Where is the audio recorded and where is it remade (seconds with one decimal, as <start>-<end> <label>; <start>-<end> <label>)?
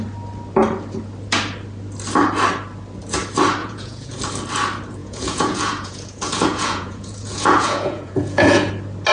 0.0-3.6 recorded; 3.6-4.2 remade; 4.2-5.0 recorded; 5.0-8.7 remade; 8.7-9.1 recorded